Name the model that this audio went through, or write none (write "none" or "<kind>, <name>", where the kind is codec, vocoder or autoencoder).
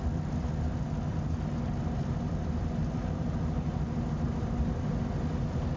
none